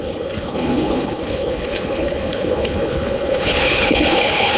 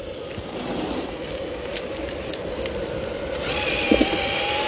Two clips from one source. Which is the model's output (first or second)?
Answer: first